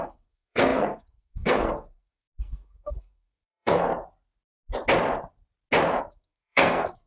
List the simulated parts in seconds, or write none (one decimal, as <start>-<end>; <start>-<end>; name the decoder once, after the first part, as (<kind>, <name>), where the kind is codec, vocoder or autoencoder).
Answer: 0.0-3.9 (codec, SNAC); 6.0-7.1